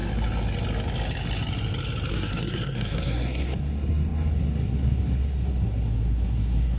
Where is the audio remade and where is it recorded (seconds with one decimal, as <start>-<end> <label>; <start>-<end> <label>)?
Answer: 0.0-2.1 recorded; 2.1-6.8 remade